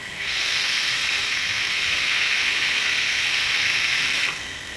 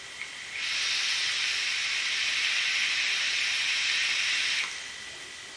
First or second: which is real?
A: second